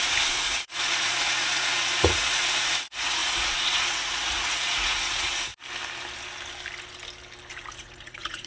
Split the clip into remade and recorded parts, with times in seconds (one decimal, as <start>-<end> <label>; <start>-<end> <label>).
0.0-5.5 remade; 5.5-7.7 recorded; 7.7-8.5 remade